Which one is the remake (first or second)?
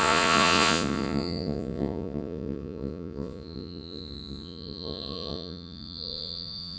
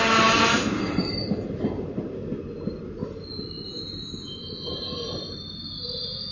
first